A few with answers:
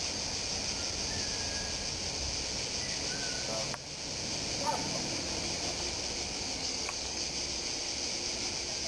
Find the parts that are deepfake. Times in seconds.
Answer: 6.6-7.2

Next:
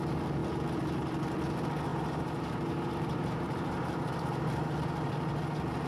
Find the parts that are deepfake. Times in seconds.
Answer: 1.9-5.4

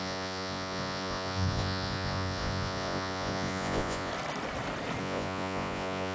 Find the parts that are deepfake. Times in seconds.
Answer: 0.0-4.1; 5.0-6.1